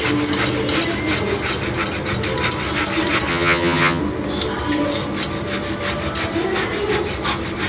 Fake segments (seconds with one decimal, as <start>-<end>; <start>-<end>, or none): 3.3-4.0